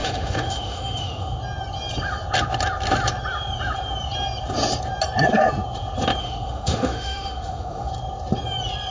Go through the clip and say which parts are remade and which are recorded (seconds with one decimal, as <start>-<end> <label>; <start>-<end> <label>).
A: 0.0-1.4 remade; 1.4-6.2 recorded; 6.2-7.9 remade; 7.9-8.9 recorded